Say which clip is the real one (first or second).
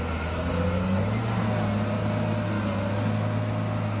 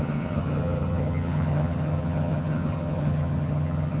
first